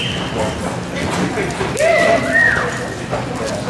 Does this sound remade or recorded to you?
recorded